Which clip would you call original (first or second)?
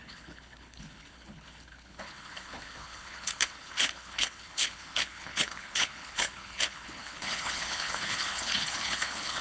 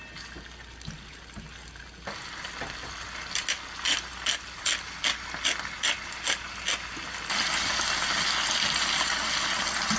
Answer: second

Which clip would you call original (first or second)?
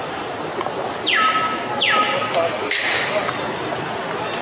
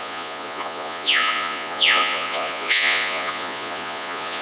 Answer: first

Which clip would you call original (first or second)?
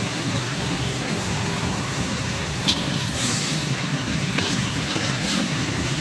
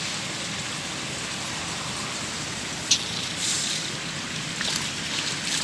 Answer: second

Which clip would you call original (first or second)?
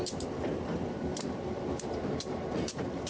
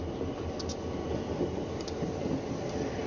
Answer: second